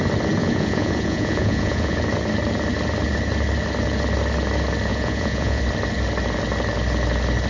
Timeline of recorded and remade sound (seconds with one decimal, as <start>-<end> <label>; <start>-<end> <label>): 0.0-0.4 recorded; 0.4-2.0 remade; 2.0-4.9 recorded; 4.9-5.6 remade; 5.6-7.5 recorded